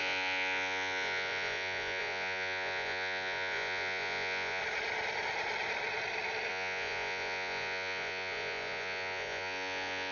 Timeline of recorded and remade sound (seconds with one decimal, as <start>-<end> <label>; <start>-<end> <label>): 0.0-4.6 remade; 4.6-6.5 recorded; 6.5-10.1 remade